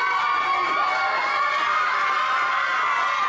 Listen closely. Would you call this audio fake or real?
real